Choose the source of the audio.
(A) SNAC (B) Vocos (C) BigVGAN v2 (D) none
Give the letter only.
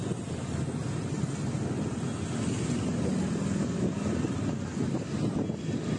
D